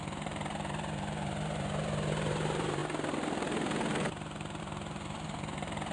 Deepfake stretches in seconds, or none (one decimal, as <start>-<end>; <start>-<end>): 0.0-2.8; 4.6-5.9